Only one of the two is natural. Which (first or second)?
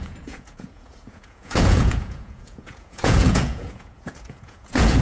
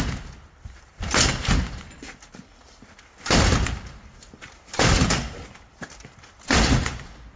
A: second